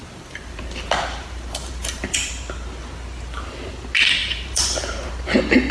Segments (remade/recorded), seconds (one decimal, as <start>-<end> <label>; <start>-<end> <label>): 0.0-2.3 remade; 2.3-4.2 recorded; 4.2-5.1 remade; 5.1-5.7 recorded